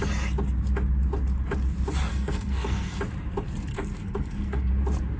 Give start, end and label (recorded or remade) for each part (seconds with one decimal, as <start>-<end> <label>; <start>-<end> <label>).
0.0-2.1 recorded; 2.1-3.0 remade; 3.0-3.7 recorded; 3.7-4.7 remade; 4.7-5.2 recorded

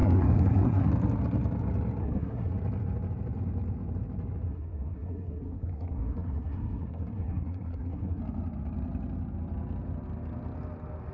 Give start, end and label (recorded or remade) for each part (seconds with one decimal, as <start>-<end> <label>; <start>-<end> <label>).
0.0-0.9 remade; 0.9-2.0 recorded; 2.0-2.5 remade; 2.5-4.5 recorded; 4.5-8.2 remade; 8.2-11.1 recorded

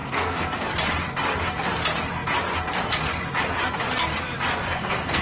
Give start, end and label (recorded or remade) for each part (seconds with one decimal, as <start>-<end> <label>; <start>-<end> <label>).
0.0-0.7 remade; 0.7-4.6 recorded; 4.6-5.2 remade

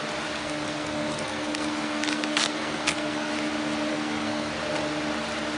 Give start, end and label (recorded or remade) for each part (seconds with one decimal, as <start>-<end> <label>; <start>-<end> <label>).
0.0-0.4 recorded; 0.4-3.3 remade; 3.3-3.9 recorded; 3.9-4.5 remade; 4.5-5.6 recorded